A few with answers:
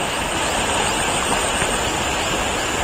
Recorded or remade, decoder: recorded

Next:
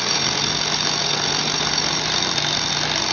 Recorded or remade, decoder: recorded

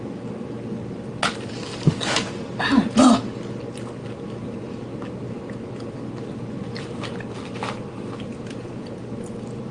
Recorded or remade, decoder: recorded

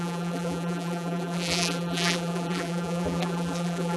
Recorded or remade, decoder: remade, vocoder, BigVGAN v2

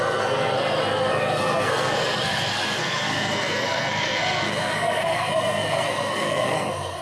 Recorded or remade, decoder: remade, codec, SNAC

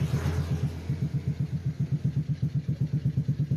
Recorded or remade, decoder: recorded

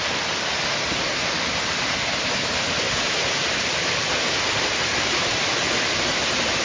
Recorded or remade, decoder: recorded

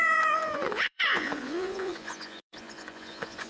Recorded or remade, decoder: remade, vocoder, Vocos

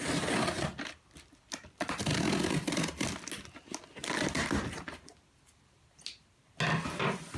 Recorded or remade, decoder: recorded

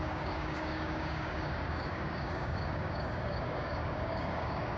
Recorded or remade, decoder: remade, codec, DAC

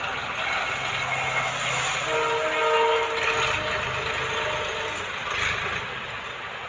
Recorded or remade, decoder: recorded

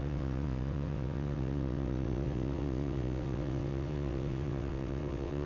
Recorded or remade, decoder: remade, vocoder, WaveNeXt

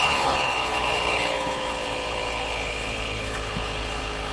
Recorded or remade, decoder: remade, codec, HILCodec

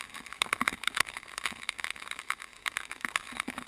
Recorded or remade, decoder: remade, autoencoder, DAC-VAE